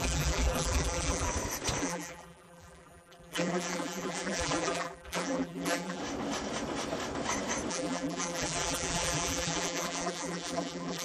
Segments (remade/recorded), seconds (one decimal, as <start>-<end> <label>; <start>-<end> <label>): 0.0-1.3 remade; 1.3-1.8 recorded; 1.8-6.0 remade; 6.0-7.7 recorded; 7.7-11.0 remade